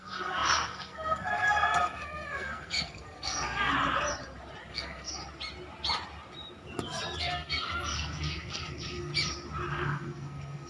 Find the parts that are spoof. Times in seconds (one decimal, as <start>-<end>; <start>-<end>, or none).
0.0-3.7; 4.7-5.2; 7.2-9.1; 9.7-10.7